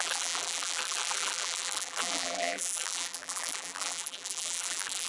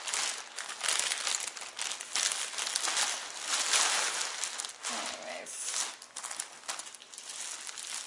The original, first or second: second